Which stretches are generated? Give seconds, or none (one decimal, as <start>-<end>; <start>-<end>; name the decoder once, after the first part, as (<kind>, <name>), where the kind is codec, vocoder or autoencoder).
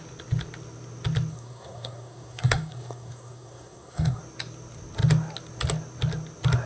1.3-4.2 (codec, SNAC)